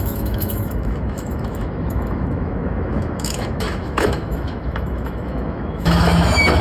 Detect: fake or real fake